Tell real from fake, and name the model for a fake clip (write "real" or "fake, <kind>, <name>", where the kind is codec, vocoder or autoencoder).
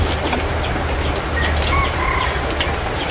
real